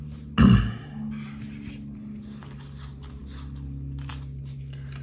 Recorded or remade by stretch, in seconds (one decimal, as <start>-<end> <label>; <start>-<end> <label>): 0.0-5.0 recorded

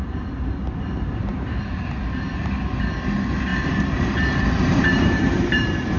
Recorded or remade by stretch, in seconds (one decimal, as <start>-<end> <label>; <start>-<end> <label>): 0.0-3.5 recorded; 3.5-6.0 remade

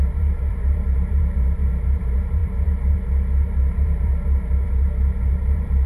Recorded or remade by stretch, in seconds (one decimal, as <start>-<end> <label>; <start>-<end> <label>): 0.0-5.9 remade

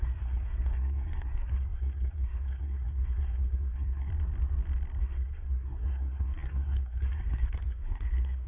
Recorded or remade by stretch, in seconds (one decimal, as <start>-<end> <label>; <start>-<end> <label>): 0.0-4.1 remade; 4.1-5.0 recorded; 5.0-8.5 remade